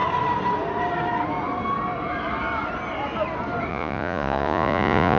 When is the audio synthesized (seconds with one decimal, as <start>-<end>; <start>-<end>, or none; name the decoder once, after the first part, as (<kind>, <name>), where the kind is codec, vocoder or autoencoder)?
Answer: 3.7-5.2 (vocoder, Vocos)